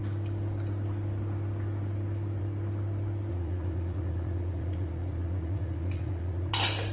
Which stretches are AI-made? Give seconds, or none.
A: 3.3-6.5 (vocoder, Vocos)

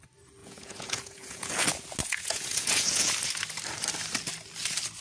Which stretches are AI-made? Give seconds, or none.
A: 0.4-1.5 (vocoder, Vocos); 2.0-3.1

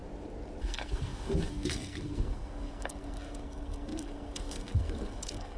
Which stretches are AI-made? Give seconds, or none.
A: 0.6-5.6 (codec, SNAC)